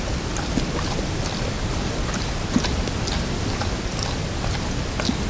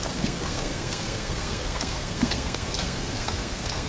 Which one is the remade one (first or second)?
second